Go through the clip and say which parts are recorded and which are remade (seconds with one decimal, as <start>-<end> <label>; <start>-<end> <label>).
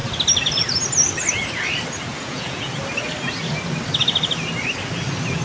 0.0-2.1 recorded; 2.1-2.7 remade; 2.7-5.4 recorded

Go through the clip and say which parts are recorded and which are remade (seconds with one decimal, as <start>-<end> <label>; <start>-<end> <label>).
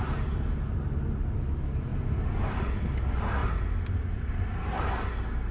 0.0-5.5 recorded